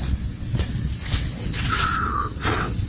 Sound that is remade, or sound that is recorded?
remade